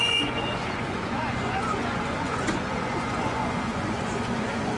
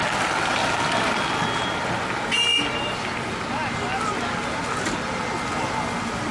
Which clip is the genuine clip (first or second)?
second